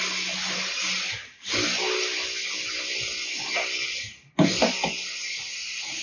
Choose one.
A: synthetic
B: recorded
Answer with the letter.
B